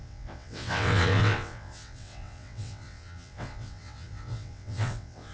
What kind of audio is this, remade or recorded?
remade